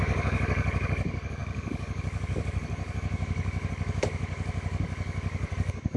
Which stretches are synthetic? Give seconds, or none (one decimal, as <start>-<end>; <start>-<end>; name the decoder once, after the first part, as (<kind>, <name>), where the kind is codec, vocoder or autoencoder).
0.0-6.0 (codec, DAC)